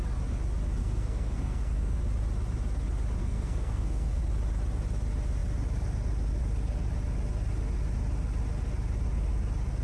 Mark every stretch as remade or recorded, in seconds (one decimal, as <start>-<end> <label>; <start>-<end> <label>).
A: 0.0-0.8 recorded; 0.8-2.0 remade; 2.0-3.2 recorded; 3.2-4.2 remade; 4.2-9.8 recorded